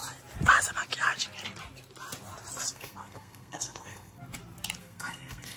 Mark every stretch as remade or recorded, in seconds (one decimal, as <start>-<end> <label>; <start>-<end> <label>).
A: 0.0-2.7 recorded; 2.7-4.2 remade; 4.2-4.8 recorded; 4.8-5.6 remade

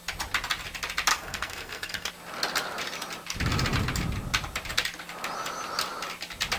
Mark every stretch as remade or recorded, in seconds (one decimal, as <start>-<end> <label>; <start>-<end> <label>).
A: 0.0-1.1 recorded; 1.1-2.1 remade; 2.1-6.6 recorded

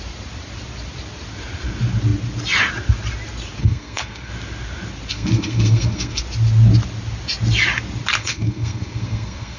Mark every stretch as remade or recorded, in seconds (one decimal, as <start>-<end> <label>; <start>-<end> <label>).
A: 0.0-3.6 recorded; 3.6-4.3 remade; 4.3-5.1 recorded; 5.1-6.2 remade; 6.2-8.2 recorded; 8.2-9.6 remade

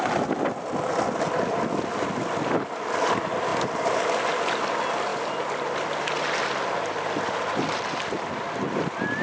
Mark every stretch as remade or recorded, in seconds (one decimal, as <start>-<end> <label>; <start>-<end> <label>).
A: 0.0-9.2 recorded